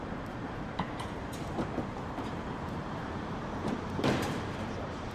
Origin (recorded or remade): remade